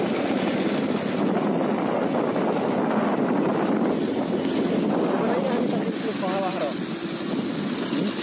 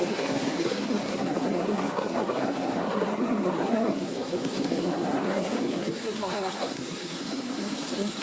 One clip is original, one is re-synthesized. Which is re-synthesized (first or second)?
second